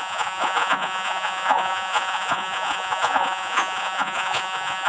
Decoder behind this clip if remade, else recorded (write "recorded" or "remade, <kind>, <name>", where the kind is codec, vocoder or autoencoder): remade, vocoder, Vocos